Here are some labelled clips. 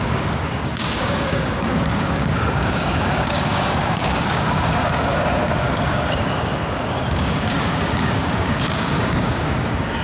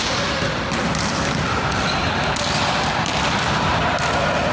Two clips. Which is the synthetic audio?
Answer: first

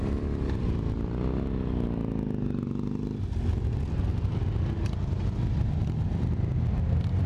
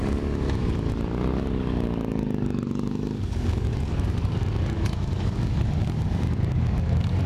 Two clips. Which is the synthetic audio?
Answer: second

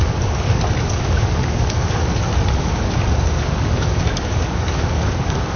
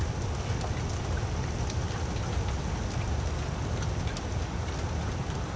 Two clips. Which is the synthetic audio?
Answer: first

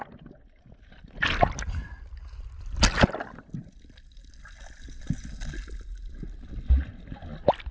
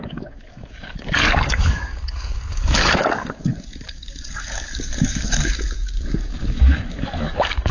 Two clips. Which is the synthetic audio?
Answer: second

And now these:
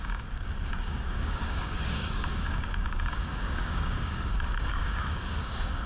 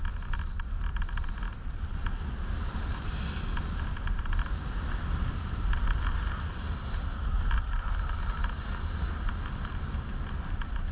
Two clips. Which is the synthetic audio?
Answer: first